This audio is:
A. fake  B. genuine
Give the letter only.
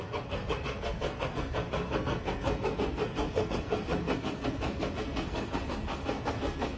A